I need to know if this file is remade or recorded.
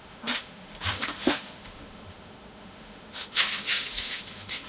remade